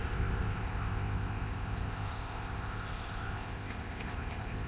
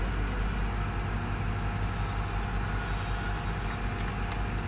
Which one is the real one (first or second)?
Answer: second